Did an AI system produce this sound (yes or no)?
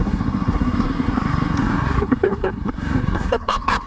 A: yes